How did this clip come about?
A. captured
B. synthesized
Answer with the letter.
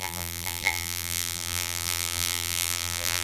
B